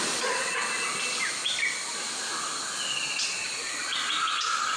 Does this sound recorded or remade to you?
recorded